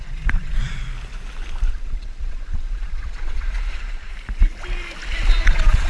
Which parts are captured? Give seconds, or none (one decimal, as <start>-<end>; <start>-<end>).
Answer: 0.6-1.7; 4.1-5.4